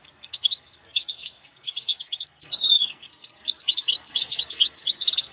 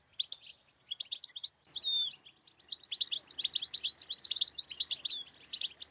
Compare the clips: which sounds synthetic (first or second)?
first